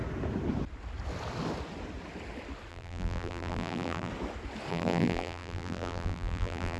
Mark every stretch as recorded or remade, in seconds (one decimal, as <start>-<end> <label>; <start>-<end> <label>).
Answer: 0.0-2.7 recorded; 2.7-4.1 remade; 4.1-4.7 recorded; 4.7-6.8 remade